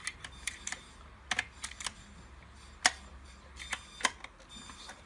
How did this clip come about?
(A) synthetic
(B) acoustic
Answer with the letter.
B